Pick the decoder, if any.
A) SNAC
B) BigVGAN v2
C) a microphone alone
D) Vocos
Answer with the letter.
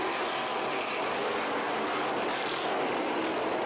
C